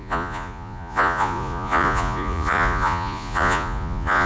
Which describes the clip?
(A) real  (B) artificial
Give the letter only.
B